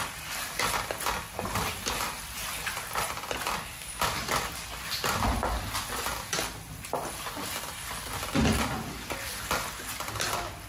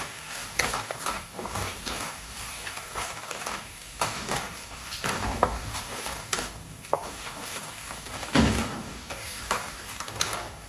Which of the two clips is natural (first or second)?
first